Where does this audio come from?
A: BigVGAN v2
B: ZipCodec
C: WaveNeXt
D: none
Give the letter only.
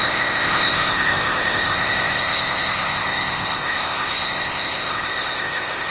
B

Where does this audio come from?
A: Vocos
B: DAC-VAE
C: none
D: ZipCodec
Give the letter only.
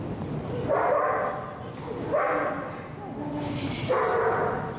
C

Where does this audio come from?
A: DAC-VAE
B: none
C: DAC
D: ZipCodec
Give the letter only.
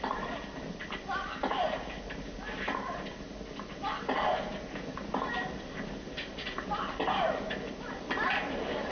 B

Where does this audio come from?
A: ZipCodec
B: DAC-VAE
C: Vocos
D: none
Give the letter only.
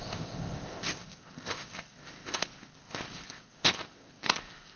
A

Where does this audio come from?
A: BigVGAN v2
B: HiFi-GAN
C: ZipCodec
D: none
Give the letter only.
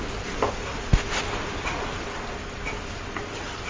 D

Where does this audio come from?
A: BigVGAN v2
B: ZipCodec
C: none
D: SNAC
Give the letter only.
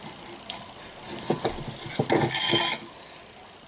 C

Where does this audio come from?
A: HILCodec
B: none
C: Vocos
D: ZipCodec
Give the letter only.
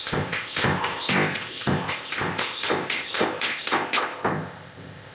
D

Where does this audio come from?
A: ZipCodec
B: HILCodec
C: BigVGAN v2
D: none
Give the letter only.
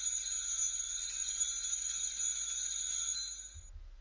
D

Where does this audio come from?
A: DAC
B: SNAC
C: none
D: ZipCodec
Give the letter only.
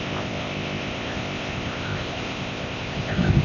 D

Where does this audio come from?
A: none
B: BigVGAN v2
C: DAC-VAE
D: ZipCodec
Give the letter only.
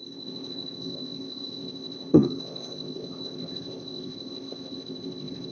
D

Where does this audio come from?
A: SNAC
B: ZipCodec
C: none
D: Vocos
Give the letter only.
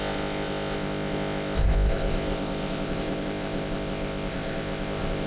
B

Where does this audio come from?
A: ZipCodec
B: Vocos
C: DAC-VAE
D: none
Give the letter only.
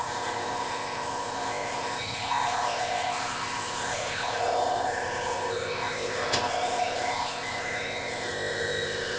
A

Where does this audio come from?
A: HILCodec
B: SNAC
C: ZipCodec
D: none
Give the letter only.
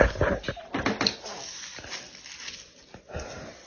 D